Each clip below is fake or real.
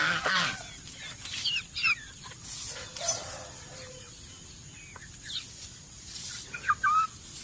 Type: real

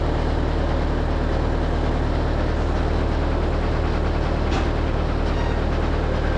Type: real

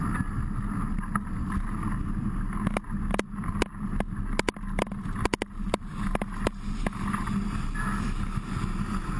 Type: real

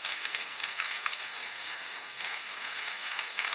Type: fake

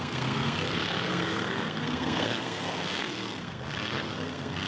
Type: fake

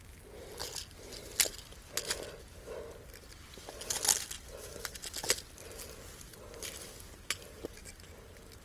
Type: real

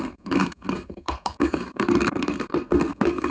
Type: fake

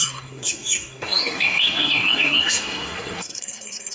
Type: fake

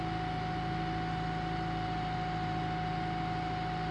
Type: real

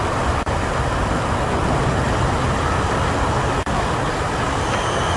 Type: real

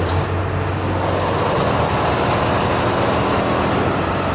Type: real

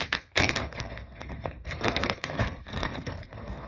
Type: fake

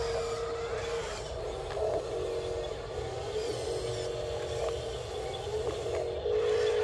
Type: real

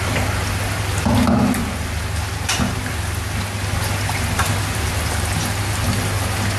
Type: real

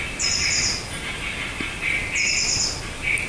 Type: real